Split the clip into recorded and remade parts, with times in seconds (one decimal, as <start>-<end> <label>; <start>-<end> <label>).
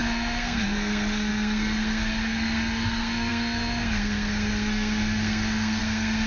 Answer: 0.0-6.3 remade